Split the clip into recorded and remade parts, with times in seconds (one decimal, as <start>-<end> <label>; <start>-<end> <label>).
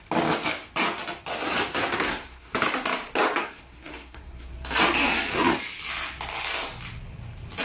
0.0-1.7 recorded; 1.7-2.5 remade; 2.5-3.4 recorded; 3.4-4.5 remade; 4.5-7.6 recorded